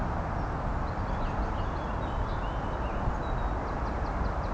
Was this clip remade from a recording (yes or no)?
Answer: no